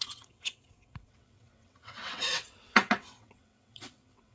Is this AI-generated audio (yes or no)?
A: yes